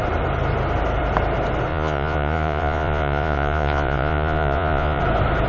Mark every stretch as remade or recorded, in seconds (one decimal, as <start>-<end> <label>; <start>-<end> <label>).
0.0-1.7 recorded; 1.7-5.0 remade; 5.0-5.5 recorded